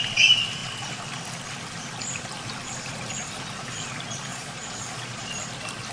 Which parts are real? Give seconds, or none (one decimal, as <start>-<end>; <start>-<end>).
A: 0.0-4.3; 5.3-5.9